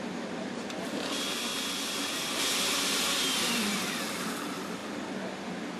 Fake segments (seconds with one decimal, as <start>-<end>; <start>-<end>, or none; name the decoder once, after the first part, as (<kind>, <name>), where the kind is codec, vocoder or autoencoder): 0.0-4.8 (vocoder, BigVGAN v2)